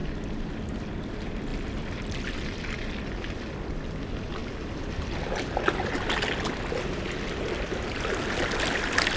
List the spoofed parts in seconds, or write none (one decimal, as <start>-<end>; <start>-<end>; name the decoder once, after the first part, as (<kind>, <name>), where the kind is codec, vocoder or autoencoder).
none